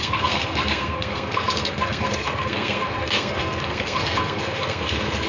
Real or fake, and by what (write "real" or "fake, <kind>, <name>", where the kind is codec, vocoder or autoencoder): fake, codec, SNAC